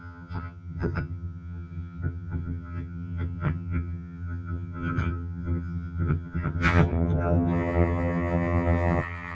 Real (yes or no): no